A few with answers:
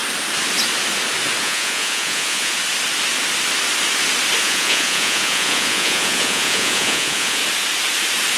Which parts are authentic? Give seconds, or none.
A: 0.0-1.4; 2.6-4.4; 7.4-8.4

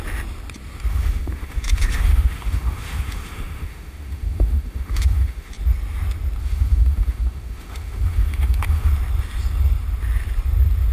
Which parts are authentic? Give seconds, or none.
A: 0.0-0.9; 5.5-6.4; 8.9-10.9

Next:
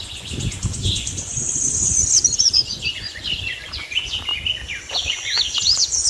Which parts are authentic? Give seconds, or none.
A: 4.3-4.9

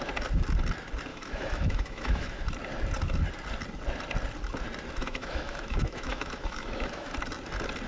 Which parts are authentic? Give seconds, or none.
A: 0.0-1.1; 2.4-5.0; 7.1-7.9

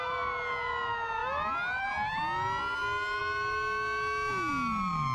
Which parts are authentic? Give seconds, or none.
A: 0.0-5.1

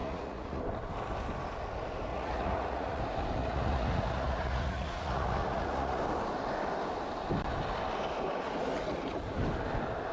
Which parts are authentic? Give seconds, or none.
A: 0.6-2.1; 3.0-3.4; 6.0-10.1

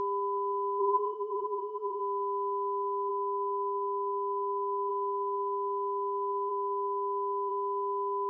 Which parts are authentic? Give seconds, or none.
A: 0.0-0.8; 2.0-8.3

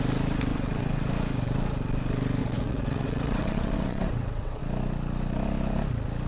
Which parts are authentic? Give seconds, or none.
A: 0.0-0.5; 1.1-2.4; 4.6-6.3